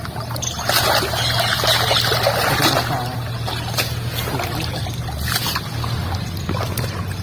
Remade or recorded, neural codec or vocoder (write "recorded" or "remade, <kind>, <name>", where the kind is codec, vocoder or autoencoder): recorded